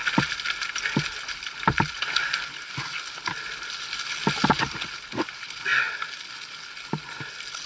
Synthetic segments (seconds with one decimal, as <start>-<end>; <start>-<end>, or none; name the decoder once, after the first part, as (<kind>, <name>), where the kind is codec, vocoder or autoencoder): none